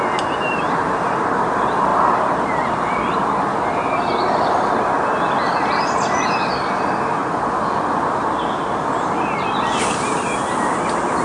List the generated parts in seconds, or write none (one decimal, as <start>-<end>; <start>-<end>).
none